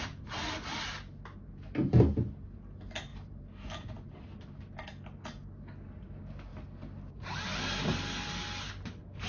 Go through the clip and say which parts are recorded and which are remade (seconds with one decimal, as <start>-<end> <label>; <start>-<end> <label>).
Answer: 0.0-9.3 recorded